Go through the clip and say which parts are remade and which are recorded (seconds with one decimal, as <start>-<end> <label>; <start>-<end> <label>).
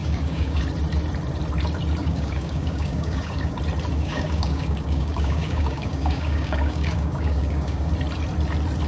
0.0-0.6 remade; 0.6-2.0 recorded; 2.0-3.6 remade; 3.6-4.0 recorded; 4.0-7.9 remade; 7.9-8.9 recorded